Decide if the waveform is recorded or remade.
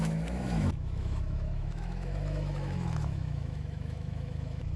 remade